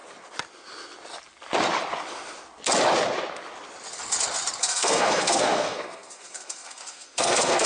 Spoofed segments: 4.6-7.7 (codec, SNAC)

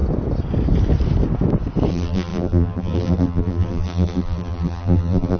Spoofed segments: 1.9-5.4 (vocoder, BigVGAN v2)

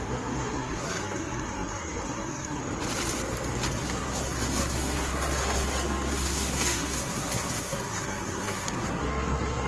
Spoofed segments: 0.0-2.6 (codec, SNAC); 3.7-9.7

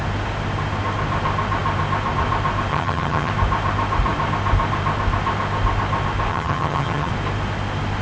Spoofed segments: 2.7-3.3 (vocoder, HiFi-GAN); 6.3-7.1

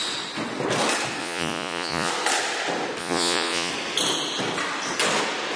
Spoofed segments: 1.2-2.1 (vocoder, Vocos); 3.0-3.7

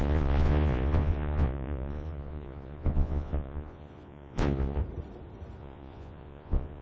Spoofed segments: 0.0-4.8 (vocoder, Vocos); 5.6-6.8

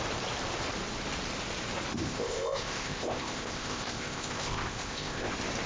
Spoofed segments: 1.9-5.3 (codec, ZipCodec)